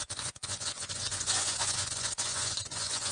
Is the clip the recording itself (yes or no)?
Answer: no